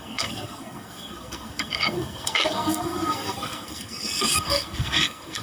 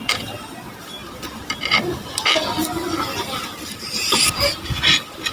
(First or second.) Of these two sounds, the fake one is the first